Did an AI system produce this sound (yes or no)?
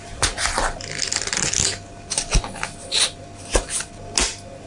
no